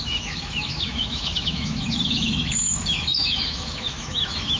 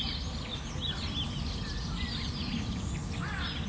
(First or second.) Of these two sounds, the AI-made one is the first